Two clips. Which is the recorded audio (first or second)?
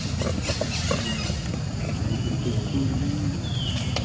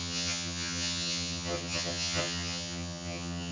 first